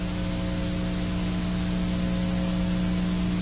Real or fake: real